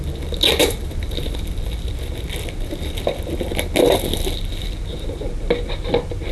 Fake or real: real